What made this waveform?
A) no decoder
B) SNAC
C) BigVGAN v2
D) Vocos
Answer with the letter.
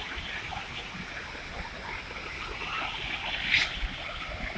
A